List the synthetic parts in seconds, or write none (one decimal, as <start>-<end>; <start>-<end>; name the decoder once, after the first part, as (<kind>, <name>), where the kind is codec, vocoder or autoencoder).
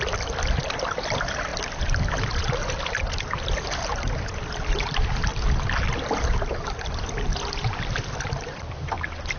0.0-1.5 (vocoder, BigVGAN v2); 4.2-5.3; 8.7-9.4